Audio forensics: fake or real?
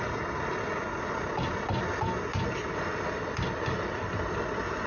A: real